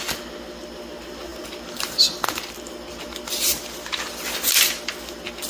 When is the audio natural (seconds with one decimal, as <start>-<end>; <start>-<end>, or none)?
0.0-5.5

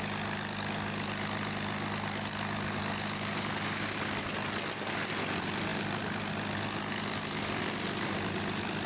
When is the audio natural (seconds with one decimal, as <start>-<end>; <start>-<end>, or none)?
0.0-8.9

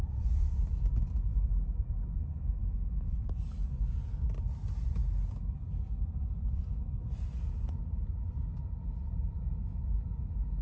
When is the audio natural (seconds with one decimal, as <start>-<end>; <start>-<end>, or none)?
0.0-10.6

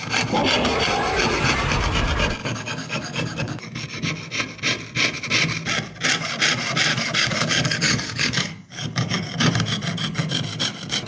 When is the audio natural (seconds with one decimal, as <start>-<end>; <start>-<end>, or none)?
0.0-2.4; 4.1-6.9; 9.5-11.1